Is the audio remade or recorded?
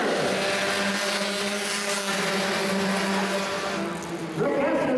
recorded